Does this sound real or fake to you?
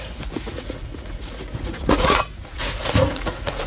fake